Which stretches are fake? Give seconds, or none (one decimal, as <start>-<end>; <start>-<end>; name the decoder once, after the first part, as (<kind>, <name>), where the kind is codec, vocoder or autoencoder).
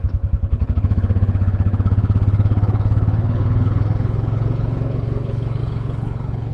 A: 0.0-6.5 (codec, HILCodec)